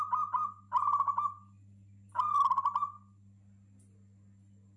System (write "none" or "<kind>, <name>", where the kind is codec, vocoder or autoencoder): none